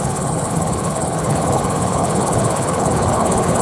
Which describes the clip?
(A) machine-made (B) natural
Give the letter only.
A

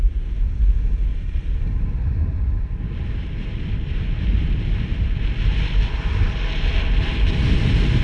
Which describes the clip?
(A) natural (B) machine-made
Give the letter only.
A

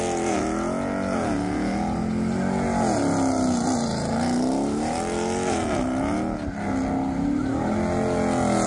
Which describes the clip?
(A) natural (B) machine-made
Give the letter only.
A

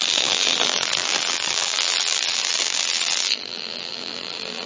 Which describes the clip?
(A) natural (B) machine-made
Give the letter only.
B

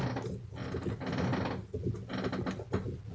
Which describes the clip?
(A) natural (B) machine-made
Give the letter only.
A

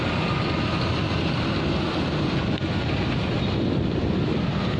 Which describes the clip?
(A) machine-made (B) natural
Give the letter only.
B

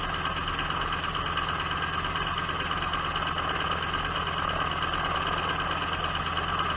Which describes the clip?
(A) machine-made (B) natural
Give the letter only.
B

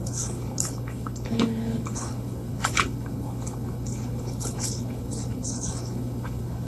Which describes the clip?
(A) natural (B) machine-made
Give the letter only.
B